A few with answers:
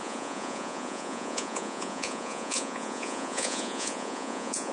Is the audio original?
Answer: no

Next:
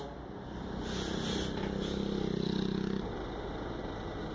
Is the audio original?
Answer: yes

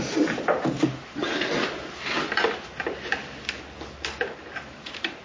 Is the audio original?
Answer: yes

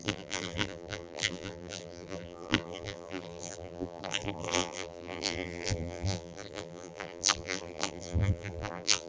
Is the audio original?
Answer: no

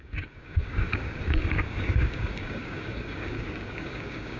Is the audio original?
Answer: no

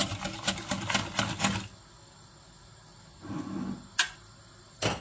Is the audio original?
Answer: yes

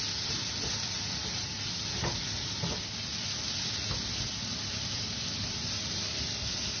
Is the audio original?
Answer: yes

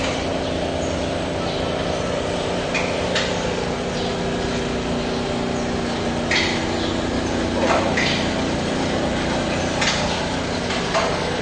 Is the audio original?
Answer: yes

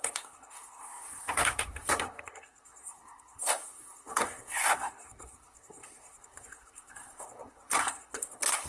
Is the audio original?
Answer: no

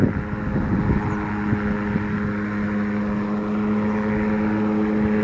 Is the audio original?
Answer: yes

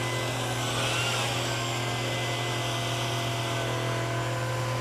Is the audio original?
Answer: yes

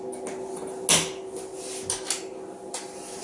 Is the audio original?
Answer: yes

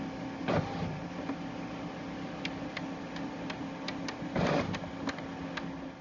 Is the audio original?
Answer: yes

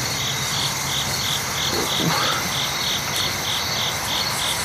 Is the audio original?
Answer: yes